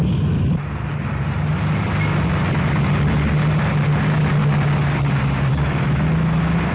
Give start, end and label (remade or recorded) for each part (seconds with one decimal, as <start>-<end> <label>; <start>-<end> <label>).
0.0-6.7 recorded